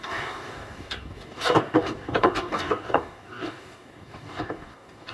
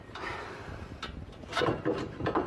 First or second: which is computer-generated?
first